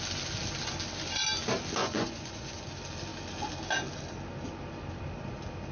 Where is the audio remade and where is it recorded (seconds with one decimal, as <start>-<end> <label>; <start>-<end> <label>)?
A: 0.0-1.8 recorded; 1.8-2.7 remade; 2.7-5.7 recorded